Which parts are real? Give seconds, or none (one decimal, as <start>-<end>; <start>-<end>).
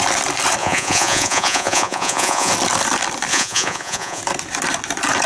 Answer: 0.0-0.6; 2.5-3.3; 4.2-5.3